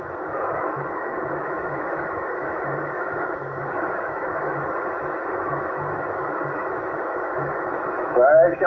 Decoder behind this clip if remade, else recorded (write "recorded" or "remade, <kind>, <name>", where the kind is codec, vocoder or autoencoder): remade, autoencoder, DAC-VAE